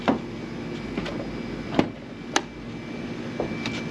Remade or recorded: recorded